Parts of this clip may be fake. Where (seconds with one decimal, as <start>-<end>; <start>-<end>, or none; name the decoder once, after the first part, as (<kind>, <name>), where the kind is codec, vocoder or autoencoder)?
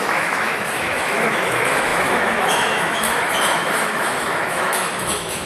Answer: 0.0-5.5 (autoencoder, DAC-VAE)